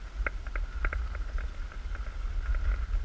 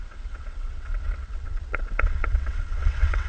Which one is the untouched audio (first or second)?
first